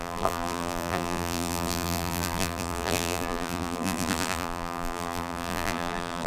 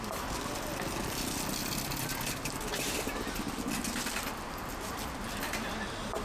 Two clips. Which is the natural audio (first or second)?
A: second